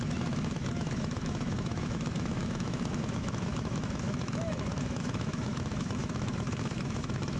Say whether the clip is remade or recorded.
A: remade